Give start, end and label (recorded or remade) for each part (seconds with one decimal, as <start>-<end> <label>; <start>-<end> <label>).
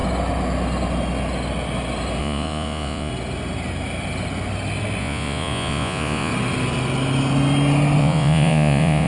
0.0-2.2 recorded; 2.2-3.1 remade; 3.1-5.0 recorded; 5.0-6.3 remade; 6.3-8.0 recorded; 8.0-9.1 remade